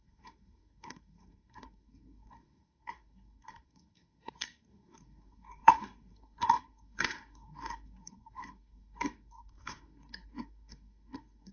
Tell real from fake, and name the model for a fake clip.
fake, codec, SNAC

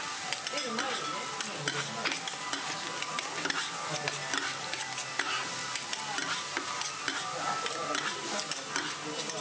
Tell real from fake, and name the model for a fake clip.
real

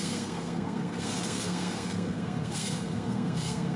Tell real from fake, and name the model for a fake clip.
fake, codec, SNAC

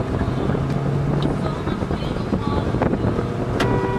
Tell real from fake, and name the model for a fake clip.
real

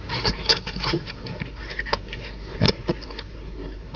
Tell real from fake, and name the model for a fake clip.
fake, codec, SNAC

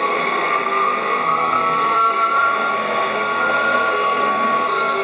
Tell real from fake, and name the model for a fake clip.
fake, codec, SNAC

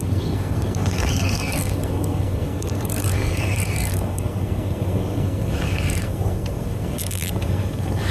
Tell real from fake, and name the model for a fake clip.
fake, codec, SNAC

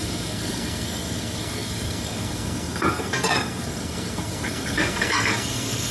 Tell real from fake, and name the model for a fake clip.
fake, codec, SNAC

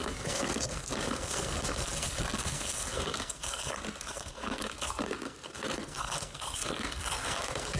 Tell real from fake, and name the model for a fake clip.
fake, codec, SNAC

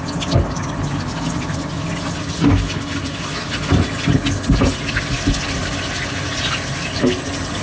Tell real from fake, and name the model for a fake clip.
real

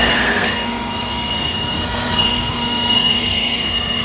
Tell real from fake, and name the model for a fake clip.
fake, codec, SNAC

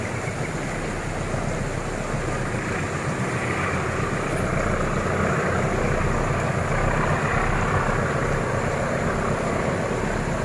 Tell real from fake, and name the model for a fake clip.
real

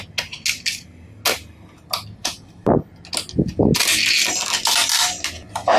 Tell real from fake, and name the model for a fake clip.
real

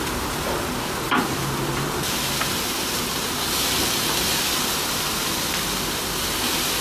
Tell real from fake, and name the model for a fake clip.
real